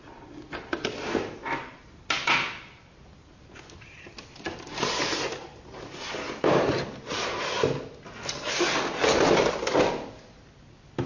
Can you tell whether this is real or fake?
real